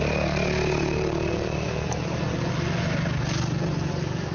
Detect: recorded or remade recorded